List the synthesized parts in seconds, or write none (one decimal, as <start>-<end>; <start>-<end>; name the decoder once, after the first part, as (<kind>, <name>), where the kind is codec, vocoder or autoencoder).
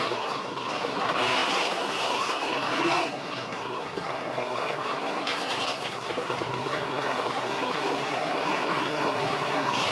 0.0-9.9 (codec, SNAC)